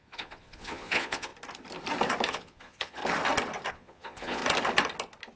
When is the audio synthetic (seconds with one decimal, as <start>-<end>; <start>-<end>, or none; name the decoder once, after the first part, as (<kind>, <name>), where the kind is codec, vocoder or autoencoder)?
0.0-1.3 (vocoder, Vocos); 2.3-3.0; 3.7-4.4